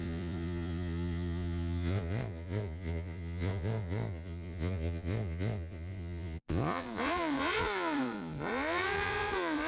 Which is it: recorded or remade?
remade